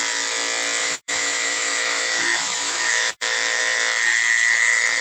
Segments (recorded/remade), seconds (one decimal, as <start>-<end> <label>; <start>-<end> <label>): 0.0-0.8 recorded; 0.8-3.6 remade; 3.6-5.0 recorded